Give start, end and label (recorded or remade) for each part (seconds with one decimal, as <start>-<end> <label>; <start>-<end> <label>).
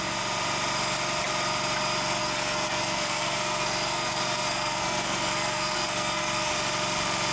0.0-2.2 recorded; 2.2-6.5 remade; 6.5-7.3 recorded